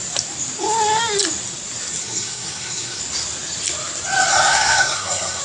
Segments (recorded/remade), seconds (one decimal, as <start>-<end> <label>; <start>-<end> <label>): 0.0-2.0 recorded; 2.0-3.0 remade; 3.0-4.3 recorded; 4.3-5.4 remade